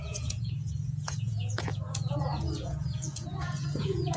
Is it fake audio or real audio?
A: fake